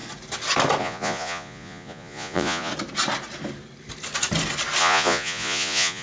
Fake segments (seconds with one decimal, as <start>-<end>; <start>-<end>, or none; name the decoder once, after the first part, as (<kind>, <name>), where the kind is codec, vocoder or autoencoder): 0.8-2.7 (vocoder, Vocos); 4.8-6.0